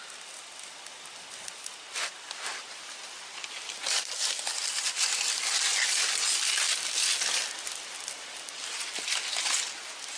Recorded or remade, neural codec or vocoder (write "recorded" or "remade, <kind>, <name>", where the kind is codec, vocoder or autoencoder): recorded